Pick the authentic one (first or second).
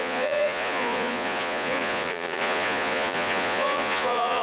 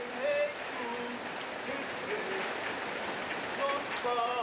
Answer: second